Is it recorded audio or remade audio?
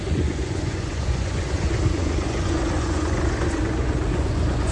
remade